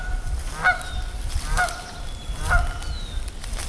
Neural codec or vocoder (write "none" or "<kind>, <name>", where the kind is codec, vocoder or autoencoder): none